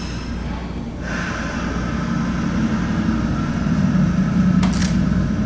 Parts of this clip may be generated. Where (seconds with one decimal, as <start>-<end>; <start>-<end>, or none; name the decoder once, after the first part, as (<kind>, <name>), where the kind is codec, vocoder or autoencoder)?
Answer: 4.8-5.5 (vocoder, BigVGAN v2)